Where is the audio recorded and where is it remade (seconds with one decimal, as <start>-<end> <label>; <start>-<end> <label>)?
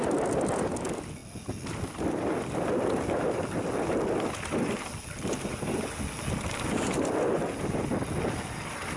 0.0-9.0 recorded